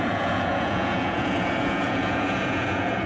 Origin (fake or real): fake